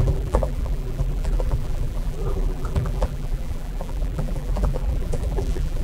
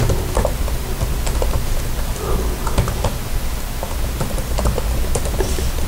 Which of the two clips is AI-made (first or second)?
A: first